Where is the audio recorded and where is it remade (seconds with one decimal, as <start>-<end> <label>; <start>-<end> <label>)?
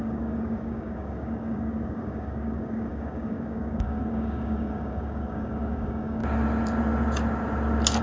0.0-6.2 remade; 6.2-8.0 recorded